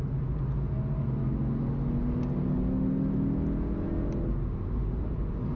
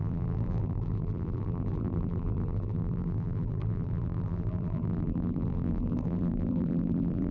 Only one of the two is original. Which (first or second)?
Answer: first